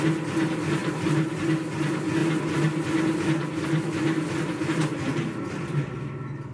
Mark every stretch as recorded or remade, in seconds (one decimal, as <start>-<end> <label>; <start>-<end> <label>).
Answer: 0.0-6.5 recorded